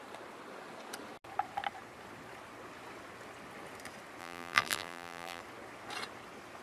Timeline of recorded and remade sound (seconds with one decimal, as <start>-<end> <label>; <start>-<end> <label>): 0.0-4.2 recorded; 4.2-5.4 remade; 5.4-6.6 recorded